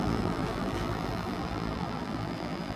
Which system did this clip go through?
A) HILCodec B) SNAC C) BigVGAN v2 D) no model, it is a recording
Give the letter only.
C